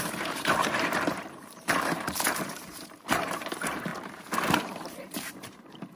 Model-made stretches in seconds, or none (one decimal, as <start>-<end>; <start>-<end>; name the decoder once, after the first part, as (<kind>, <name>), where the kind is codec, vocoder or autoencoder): 0.0-3.9 (vocoder, BigVGAN v2); 4.6-6.0